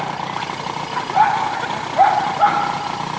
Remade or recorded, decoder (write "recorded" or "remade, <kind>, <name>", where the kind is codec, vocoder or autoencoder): recorded